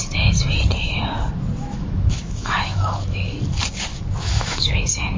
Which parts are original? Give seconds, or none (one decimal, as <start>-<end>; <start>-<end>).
0.0-1.6; 3.4-3.9